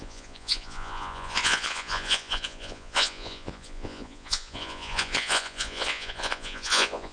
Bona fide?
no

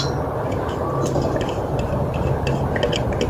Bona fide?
yes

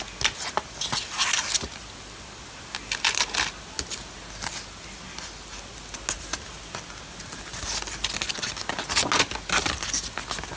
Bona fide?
yes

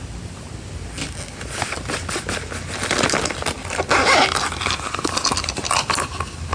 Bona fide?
yes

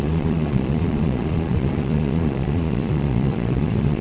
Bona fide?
no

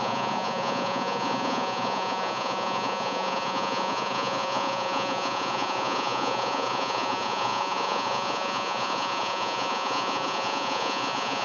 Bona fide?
no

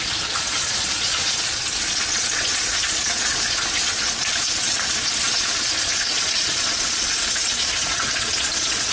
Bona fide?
no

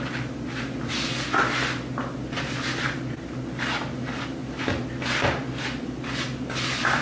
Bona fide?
yes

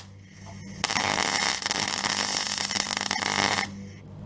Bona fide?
yes